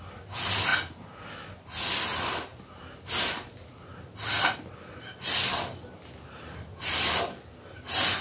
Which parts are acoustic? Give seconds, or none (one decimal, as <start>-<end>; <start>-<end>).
0.0-8.2